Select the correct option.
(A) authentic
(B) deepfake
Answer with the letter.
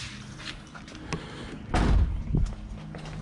A